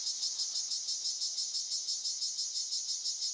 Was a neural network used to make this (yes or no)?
no